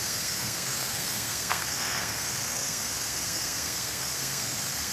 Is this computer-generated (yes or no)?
yes